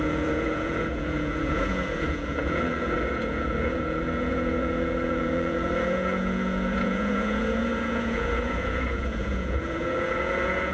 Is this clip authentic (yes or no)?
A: no